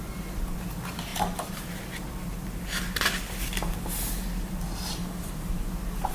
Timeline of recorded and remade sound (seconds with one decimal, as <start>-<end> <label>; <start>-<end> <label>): 0.0-5.0 recorded; 5.0-6.1 remade